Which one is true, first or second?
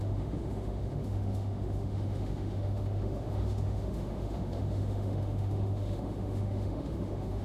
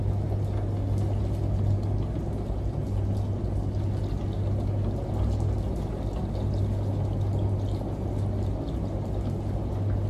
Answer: second